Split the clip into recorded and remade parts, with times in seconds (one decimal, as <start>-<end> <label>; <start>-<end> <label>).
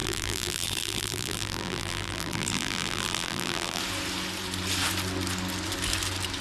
0.0-3.8 remade; 3.8-6.4 recorded